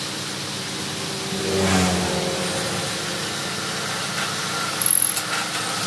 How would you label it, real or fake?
real